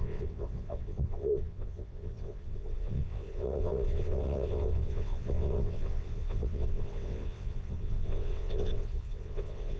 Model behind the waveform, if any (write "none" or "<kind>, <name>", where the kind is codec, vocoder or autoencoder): vocoder, WaveNeXt